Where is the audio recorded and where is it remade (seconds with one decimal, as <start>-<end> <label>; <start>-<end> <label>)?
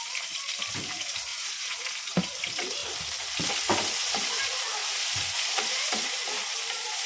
0.0-1.3 recorded; 1.3-1.9 remade; 1.9-4.8 recorded; 4.8-6.1 remade; 6.1-7.1 recorded